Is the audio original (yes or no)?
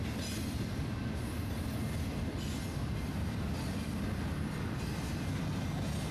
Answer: yes